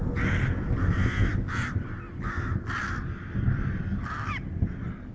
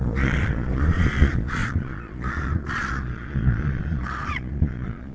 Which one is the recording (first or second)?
first